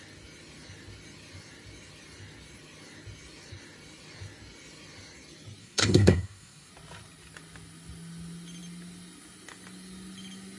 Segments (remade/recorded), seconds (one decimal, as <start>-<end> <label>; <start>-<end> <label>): 0.0-5.6 recorded; 5.6-6.7 remade; 6.7-10.6 recorded